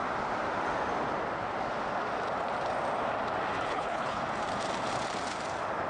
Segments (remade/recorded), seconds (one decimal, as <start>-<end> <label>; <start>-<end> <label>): 0.0-3.7 recorded; 3.7-4.2 remade; 4.2-5.9 recorded